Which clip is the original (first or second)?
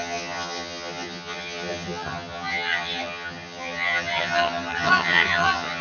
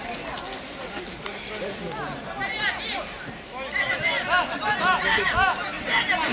second